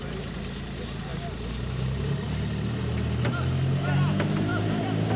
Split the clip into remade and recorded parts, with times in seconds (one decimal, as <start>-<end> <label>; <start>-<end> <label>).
0.0-5.2 recorded